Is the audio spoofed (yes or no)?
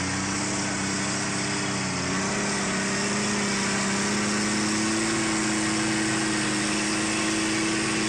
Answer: no